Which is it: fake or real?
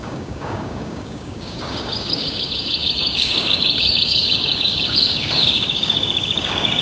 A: fake